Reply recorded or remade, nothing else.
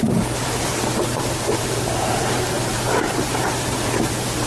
recorded